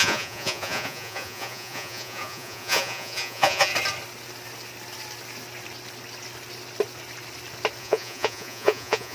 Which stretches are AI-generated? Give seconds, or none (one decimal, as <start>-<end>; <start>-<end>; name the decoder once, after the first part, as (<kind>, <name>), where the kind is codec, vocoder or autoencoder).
0.0-3.7 (vocoder, Vocos); 7.8-9.1